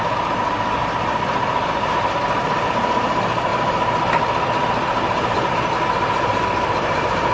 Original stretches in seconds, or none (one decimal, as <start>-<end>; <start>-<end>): 0.0-3.5; 5.7-7.3